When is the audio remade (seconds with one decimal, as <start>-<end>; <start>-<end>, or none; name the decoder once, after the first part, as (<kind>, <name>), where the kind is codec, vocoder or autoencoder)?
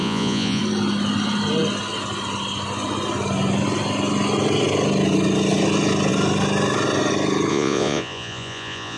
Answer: 0.0-0.6 (vocoder, Vocos); 7.5-9.0